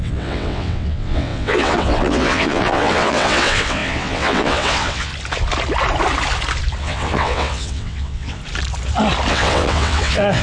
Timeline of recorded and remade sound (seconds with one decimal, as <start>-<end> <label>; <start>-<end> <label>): 0.0-5.1 remade; 5.1-6.8 recorded; 6.8-8.4 remade; 8.4-9.3 recorded; 9.3-10.4 remade